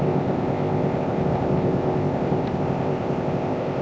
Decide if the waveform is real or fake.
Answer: fake